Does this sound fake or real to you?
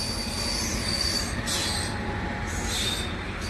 real